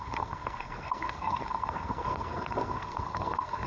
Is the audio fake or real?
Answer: fake